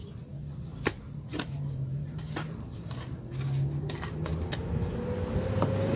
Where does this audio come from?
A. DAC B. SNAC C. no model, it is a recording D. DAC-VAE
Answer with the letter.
C